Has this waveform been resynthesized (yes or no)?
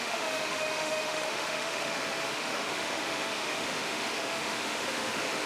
yes